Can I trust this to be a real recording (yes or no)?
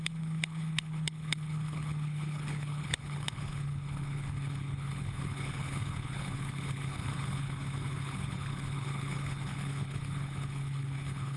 no